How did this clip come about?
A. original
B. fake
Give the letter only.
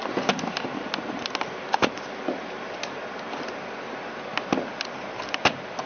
A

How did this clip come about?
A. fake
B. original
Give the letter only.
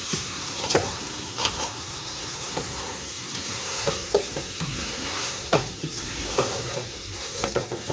A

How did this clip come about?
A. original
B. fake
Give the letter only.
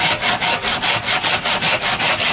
A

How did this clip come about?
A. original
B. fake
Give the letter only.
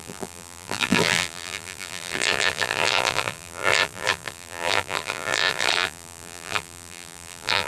B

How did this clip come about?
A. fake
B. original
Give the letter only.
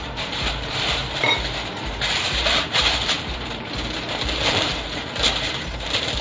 A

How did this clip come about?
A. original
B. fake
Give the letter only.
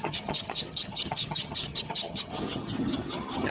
B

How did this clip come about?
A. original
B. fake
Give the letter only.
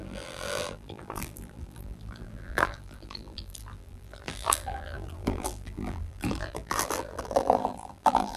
B